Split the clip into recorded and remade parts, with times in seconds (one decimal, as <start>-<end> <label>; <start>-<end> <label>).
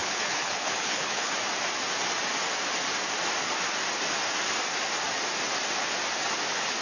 0.0-1.3 remade; 1.3-6.8 recorded